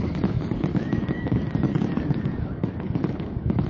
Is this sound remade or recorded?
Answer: remade